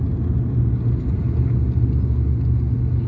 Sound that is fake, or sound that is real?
real